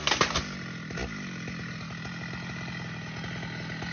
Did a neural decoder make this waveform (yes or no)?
no